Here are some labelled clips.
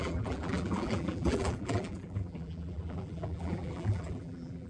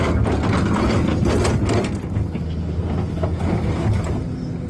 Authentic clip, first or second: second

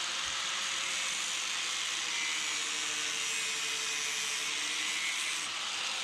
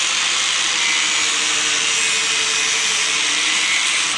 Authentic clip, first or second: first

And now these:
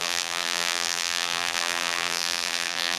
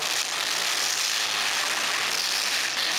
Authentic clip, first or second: second